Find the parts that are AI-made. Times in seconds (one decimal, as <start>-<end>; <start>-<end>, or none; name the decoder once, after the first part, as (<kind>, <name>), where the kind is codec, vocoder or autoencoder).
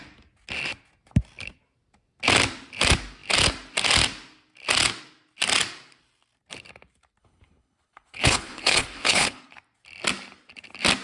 7.2-9.6 (codec, HILCodec)